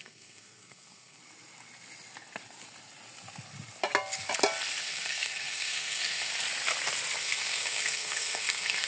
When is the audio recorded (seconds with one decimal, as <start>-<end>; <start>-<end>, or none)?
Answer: 1.2-4.8; 6.3-7.2